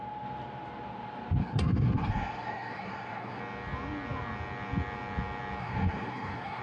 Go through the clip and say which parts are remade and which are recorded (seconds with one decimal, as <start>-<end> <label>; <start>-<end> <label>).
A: 0.0-1.4 recorded; 1.4-3.4 remade; 3.4-5.6 recorded; 5.6-6.6 remade